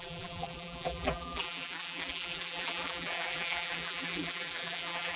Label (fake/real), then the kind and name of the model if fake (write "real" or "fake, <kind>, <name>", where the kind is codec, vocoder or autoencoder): fake, vocoder, BigVGAN v2